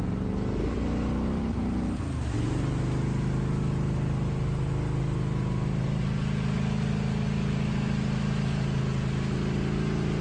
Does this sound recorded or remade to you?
recorded